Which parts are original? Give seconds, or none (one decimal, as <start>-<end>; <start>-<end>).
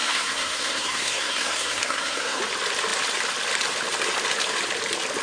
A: 2.4-5.2